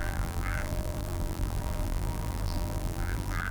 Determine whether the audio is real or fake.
fake